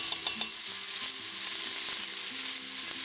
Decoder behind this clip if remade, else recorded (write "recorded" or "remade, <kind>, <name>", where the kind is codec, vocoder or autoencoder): recorded